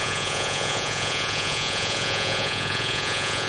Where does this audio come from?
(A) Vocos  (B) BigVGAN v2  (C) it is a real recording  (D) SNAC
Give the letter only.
A